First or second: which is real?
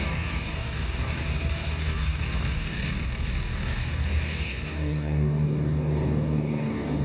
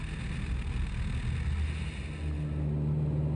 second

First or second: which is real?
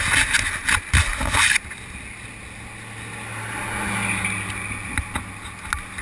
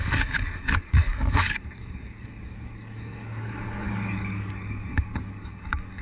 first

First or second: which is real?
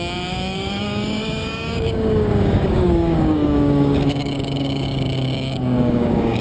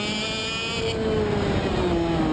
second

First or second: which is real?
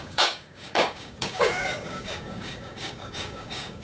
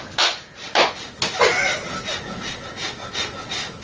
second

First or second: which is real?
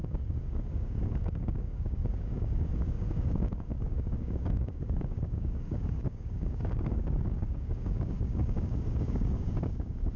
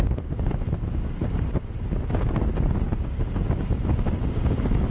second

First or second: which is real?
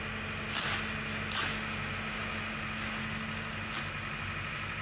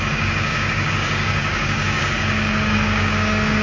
first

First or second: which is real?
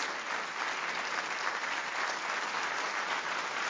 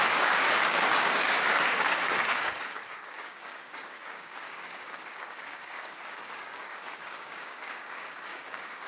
first